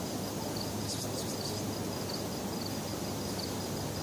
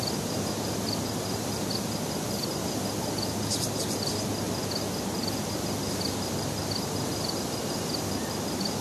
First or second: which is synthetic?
second